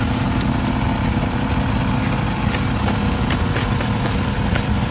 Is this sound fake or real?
real